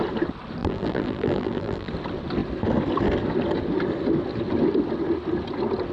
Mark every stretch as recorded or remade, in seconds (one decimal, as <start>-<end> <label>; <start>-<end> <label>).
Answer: 0.0-0.6 recorded; 0.6-1.9 remade; 1.9-5.9 recorded

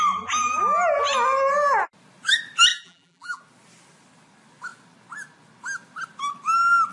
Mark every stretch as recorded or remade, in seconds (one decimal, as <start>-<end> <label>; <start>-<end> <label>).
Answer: 0.0-2.7 recorded; 2.7-3.4 remade; 3.4-6.9 recorded

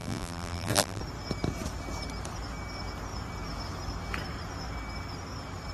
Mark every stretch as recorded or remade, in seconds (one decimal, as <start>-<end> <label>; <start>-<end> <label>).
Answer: 0.0-1.0 remade; 1.0-5.7 recorded

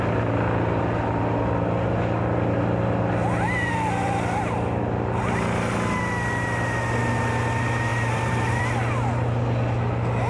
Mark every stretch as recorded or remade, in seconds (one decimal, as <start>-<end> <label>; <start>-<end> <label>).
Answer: 0.0-7.9 recorded; 7.9-8.6 remade; 8.6-10.3 recorded

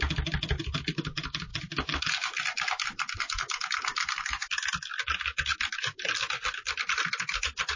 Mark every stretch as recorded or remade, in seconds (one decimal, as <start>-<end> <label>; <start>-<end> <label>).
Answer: 0.0-7.8 recorded

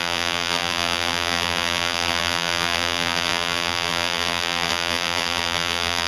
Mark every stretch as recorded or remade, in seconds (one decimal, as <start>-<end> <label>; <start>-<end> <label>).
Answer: 0.0-6.1 remade

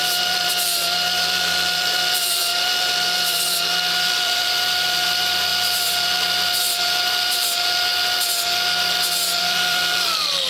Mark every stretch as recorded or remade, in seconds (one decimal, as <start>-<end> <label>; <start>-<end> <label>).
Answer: 0.0-7.9 remade; 7.9-9.4 recorded; 9.4-10.5 remade

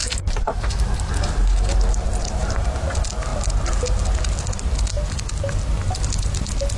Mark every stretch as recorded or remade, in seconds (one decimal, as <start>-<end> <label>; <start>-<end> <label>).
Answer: 0.0-1.1 remade; 1.1-2.2 recorded; 2.2-2.9 remade; 2.9-6.8 recorded